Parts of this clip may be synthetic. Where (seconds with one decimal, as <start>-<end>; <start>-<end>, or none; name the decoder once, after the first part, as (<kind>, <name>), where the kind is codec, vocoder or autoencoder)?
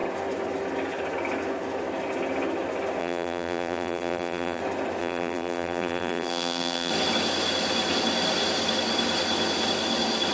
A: 3.0-4.6 (vocoder, BigVGAN v2); 5.0-6.9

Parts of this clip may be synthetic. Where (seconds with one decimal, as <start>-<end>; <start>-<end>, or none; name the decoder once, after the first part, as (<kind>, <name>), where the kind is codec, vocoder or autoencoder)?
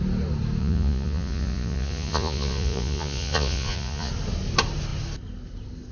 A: 0.6-4.1 (vocoder, Vocos)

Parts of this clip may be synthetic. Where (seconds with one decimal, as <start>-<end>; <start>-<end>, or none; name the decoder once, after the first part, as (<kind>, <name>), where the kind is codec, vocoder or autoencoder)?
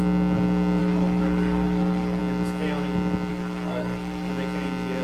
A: 0.8-2.2 (codec, SNAC); 3.3-4.3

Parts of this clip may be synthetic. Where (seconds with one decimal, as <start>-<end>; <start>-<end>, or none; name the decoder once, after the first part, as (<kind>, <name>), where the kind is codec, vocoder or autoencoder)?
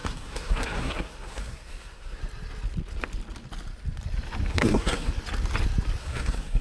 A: 0.0-2.2 (codec, SNAC); 4.5-5.1; 6.0-6.6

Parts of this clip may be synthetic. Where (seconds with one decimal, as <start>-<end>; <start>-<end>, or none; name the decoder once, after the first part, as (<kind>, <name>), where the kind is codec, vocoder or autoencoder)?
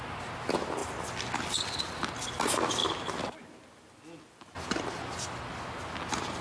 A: none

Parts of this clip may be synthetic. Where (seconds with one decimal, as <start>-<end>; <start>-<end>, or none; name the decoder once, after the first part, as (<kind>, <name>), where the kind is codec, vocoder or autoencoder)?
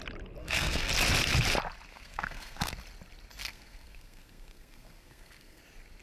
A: 0.4-0.9 (codec, SNAC); 1.9-2.7; 3.4-5.6